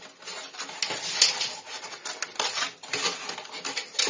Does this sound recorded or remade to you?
recorded